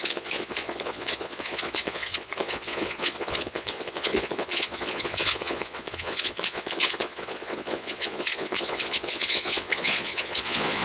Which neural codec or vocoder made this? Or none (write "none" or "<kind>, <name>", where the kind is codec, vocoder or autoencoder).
vocoder, Vocos